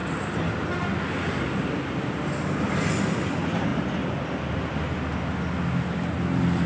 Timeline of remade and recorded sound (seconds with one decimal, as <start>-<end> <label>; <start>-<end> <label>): 0.0-6.7 recorded